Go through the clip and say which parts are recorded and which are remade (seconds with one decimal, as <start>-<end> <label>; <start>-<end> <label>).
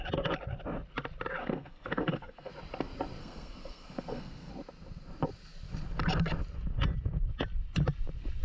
0.0-1.4 recorded; 1.4-2.5 remade; 2.5-3.2 recorded; 3.2-4.5 remade; 4.5-8.4 recorded